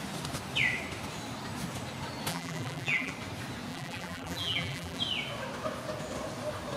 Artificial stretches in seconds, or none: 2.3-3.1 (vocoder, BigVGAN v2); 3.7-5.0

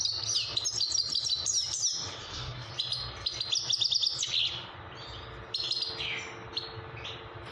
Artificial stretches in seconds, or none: 2.2-2.7 (codec, SNAC)

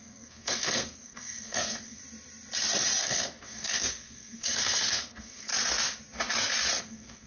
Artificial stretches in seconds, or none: 0.0-2.0 (codec, SNAC); 3.0-5.5; 6.8-7.3

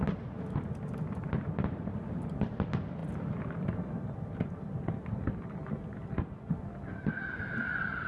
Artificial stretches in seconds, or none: none

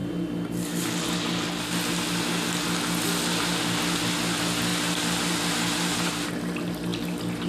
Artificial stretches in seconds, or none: 0.0-1.0 (vocoder, BigVGAN v2); 4.7-5.5; 6.9-7.5

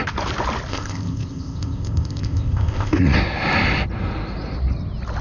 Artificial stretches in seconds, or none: 0.7-3.0 (codec, ZipCodec)

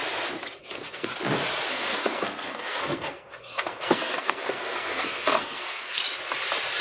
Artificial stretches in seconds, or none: 0.6-1.1 (codec, SNAC); 1.7-6.0